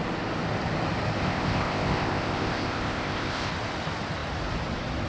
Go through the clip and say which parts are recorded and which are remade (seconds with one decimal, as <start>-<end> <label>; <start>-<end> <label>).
0.0-1.2 recorded; 1.2-3.5 remade; 3.5-5.1 recorded